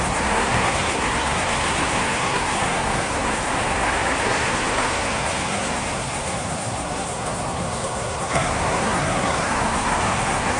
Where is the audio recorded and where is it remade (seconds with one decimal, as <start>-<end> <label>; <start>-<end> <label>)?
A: 0.0-10.6 remade